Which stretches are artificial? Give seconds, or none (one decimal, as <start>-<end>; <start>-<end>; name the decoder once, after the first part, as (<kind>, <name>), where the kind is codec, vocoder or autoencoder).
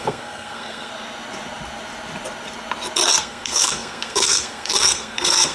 0.0-0.9 (codec, SNAC); 3.2-5.5